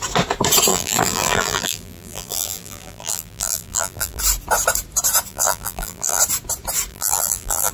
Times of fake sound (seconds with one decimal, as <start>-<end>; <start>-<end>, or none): 0.7-4.2; 5.3-6.2; 6.9-7.7